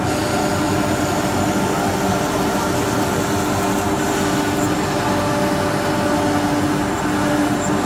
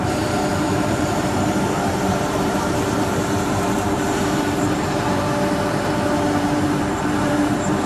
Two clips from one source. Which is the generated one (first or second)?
second